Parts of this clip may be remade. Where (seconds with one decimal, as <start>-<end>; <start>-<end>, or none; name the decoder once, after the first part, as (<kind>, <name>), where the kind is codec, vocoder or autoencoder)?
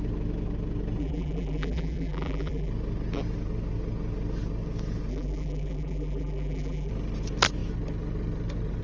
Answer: 1.0-2.7 (vocoder, BigVGAN v2); 5.1-6.9